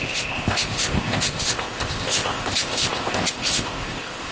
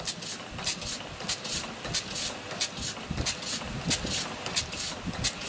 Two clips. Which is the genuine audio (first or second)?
second